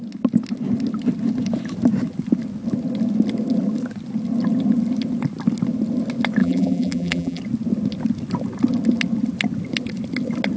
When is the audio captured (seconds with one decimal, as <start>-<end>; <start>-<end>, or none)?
0.0-6.4; 7.4-10.6